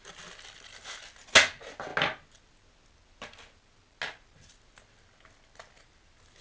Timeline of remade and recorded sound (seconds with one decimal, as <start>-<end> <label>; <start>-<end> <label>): 0.0-6.4 recorded

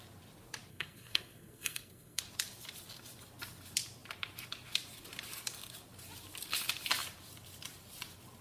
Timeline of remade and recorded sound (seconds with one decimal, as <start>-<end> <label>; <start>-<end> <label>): 0.0-0.7 recorded; 0.7-2.2 remade; 2.2-8.4 recorded

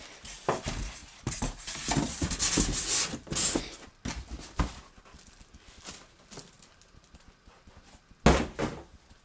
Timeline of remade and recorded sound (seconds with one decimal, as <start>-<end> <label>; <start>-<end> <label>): 0.0-1.0 recorded; 1.0-2.3 remade; 2.3-9.2 recorded

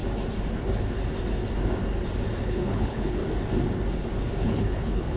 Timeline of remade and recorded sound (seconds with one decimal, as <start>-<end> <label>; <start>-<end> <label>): 0.0-2.4 recorded; 2.4-3.2 remade; 3.2-4.4 recorded; 4.4-5.2 remade

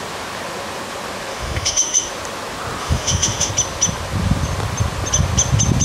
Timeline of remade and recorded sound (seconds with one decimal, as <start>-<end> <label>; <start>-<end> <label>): 0.0-1.3 recorded; 1.3-2.1 remade; 2.1-2.8 recorded; 2.8-3.5 remade; 3.5-5.8 recorded

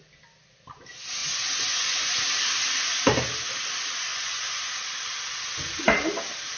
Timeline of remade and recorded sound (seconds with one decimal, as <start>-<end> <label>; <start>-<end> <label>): 0.0-1.2 recorded; 1.2-2.2 remade; 2.2-4.1 recorded; 4.1-4.7 remade; 4.7-6.6 recorded

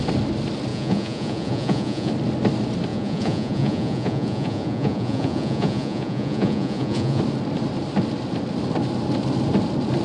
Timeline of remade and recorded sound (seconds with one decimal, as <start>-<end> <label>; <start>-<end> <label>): 0.0-0.7 recorded; 0.7-2.1 remade; 2.1-2.9 recorded; 2.9-7.2 remade; 7.2-10.0 recorded